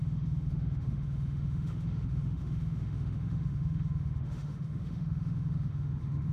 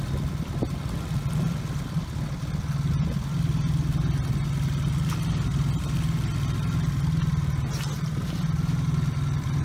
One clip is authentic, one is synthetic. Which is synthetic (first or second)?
first